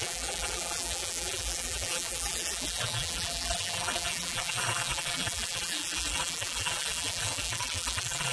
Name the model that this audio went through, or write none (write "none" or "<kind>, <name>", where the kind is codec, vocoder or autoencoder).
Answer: vocoder, BigVGAN v2